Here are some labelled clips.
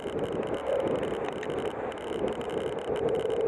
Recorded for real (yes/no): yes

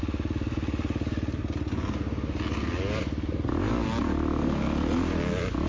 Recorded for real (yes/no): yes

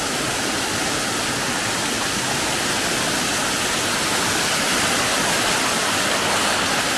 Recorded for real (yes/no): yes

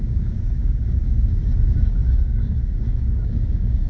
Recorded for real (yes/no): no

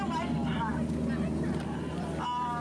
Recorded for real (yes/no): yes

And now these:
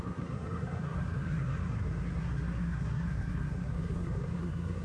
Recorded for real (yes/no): no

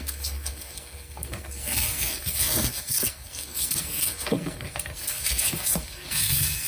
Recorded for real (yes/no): no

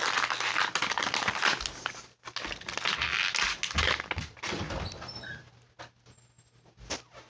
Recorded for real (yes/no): yes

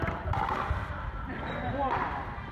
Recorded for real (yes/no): yes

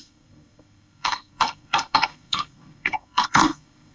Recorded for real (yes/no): no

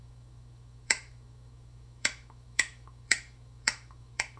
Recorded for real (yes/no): no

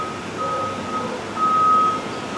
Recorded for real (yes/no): yes